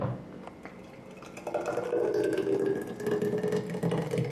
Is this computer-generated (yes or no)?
no